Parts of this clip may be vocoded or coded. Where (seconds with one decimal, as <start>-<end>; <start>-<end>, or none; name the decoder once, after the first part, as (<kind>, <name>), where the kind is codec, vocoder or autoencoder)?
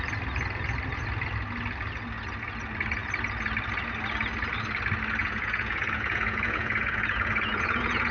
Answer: 5.2-8.1 (vocoder, Vocos)